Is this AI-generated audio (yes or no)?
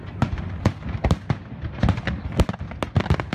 no